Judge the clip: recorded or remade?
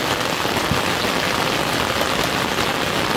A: recorded